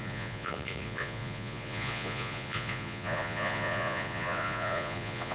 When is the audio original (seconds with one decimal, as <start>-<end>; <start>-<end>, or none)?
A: none